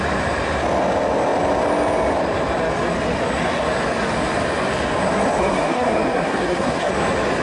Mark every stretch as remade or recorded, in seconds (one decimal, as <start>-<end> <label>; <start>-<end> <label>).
0.0-5.4 recorded; 5.4-6.9 remade; 6.9-7.4 recorded